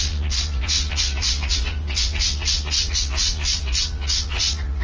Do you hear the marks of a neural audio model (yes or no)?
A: yes